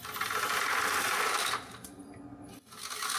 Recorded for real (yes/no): yes